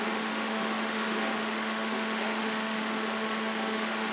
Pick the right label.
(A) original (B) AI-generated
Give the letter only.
B